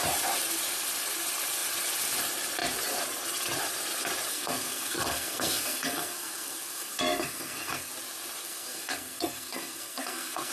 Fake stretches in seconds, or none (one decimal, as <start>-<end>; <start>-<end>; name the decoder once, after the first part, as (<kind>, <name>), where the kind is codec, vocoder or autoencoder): 4.3-7.9 (codec, SNAC); 8.4-10.5